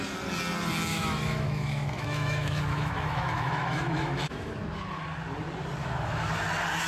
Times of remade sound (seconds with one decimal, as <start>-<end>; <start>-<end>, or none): 0.9-4.5; 5.8-6.3